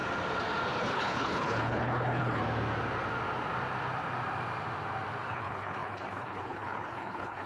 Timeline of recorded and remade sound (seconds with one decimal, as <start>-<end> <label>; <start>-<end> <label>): 0.0-0.8 recorded; 0.8-2.4 remade; 2.4-5.3 recorded; 5.3-7.5 remade